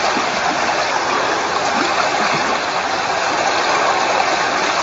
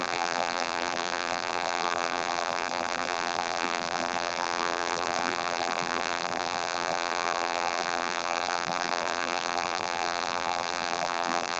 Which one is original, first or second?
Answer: first